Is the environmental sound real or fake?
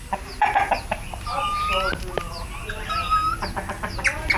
real